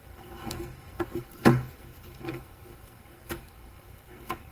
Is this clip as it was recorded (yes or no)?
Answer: no